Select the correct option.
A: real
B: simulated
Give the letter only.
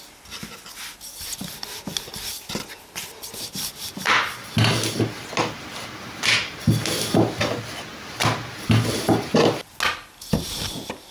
A